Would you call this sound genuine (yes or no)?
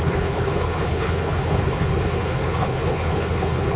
no